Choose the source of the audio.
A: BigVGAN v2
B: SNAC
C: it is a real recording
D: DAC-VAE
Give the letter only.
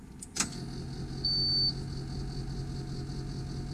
C